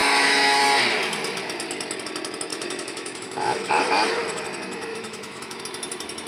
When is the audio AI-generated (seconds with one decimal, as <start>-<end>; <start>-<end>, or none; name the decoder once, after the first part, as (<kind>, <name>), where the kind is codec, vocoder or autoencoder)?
0.0-0.6 (autoencoder, DAC-VAE); 2.5-3.8; 4.9-5.6